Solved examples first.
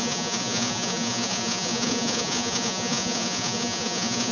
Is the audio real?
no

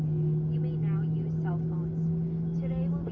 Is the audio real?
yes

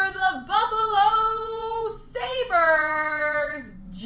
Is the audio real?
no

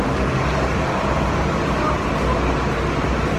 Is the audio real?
yes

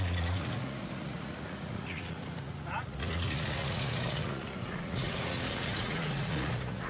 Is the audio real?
no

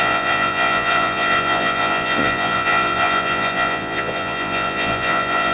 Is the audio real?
no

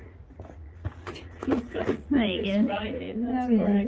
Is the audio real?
no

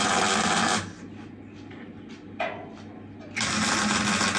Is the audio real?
yes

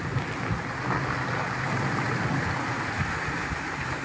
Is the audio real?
yes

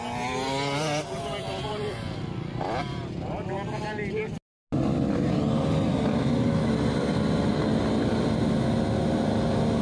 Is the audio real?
yes